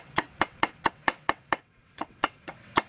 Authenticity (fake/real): fake